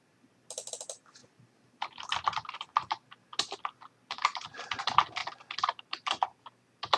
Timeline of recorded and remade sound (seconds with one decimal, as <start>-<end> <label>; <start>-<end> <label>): 0.0-7.0 recorded